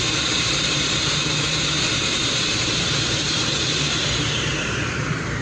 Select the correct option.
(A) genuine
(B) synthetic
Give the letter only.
B